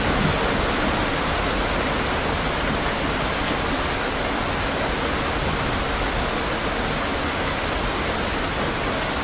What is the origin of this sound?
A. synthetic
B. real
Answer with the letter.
B